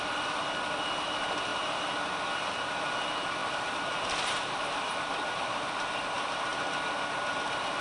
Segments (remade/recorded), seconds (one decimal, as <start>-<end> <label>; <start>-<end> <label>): 0.0-3.4 recorded; 3.4-5.7 remade; 5.7-7.8 recorded